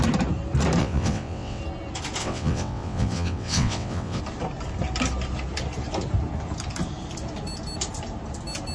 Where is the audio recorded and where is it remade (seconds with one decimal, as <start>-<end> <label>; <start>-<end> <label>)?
0.0-0.8 recorded; 0.8-1.6 remade; 1.6-2.2 recorded; 2.2-4.2 remade; 4.2-8.7 recorded